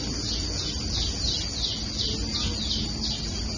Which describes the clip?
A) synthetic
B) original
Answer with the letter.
B